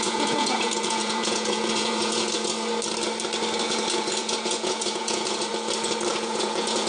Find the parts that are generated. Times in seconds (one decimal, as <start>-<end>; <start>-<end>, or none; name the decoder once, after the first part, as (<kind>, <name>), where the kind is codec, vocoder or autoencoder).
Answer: 0.0-2.5 (vocoder, Vocos); 3.6-5.5; 6.1-6.9